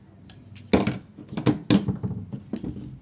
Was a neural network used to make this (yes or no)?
no